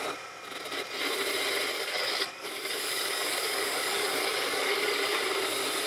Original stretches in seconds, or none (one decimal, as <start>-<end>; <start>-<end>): 0.0-1.7; 5.2-5.9